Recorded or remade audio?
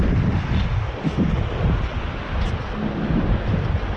recorded